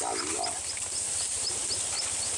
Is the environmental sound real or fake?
real